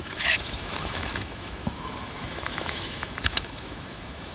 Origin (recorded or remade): remade